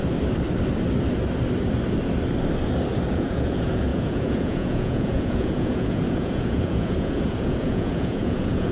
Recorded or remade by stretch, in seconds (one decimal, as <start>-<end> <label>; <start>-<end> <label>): 0.0-3.1 recorded; 3.1-8.7 remade